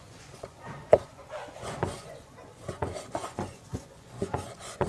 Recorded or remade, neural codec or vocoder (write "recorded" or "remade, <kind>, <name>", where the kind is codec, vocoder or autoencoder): remade, vocoder, Vocos